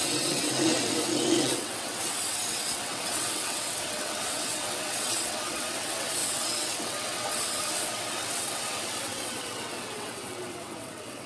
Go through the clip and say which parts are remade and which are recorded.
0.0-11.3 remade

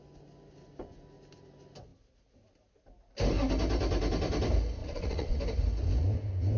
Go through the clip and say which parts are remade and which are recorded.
0.0-4.8 recorded; 4.8-5.4 remade; 5.4-6.6 recorded

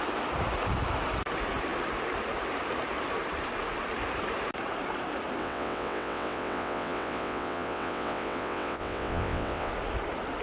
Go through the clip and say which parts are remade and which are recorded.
0.0-5.4 recorded; 5.4-9.7 remade; 9.7-10.4 recorded

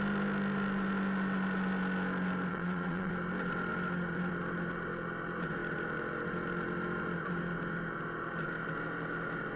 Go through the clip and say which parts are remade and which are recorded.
0.0-2.5 recorded; 2.5-3.1 remade; 3.1-9.6 recorded

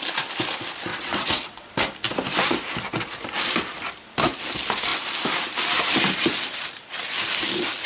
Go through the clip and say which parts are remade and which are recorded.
0.0-0.9 recorded; 0.9-1.7 remade; 1.7-7.9 recorded